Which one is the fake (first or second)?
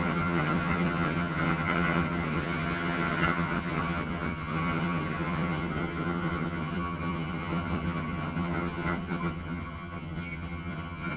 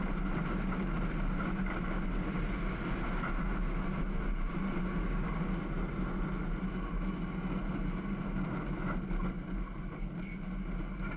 first